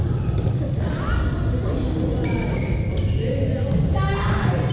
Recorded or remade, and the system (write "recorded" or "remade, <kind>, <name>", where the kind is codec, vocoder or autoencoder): recorded